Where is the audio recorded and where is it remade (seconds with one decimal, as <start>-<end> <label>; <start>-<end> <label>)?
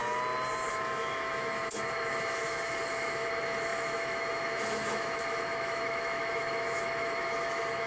0.0-0.7 recorded; 0.7-7.9 remade